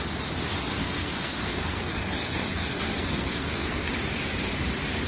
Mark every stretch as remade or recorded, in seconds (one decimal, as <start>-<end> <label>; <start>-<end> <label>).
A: 0.0-0.8 recorded; 0.8-3.9 remade; 3.9-5.1 recorded